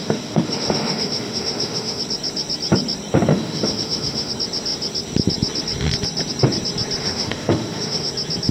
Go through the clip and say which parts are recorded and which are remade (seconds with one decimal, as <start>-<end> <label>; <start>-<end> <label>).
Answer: 0.0-2.0 remade; 2.0-3.3 recorded; 3.3-4.3 remade; 4.3-7.0 recorded; 7.0-8.1 remade; 8.1-8.5 recorded